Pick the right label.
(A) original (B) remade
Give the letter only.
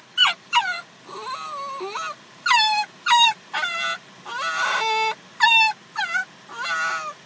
A